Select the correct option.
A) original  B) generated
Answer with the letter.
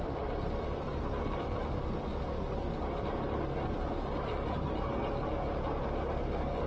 A